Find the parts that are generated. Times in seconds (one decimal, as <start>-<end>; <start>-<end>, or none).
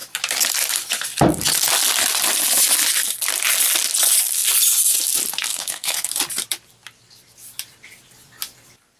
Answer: 5.5-6.1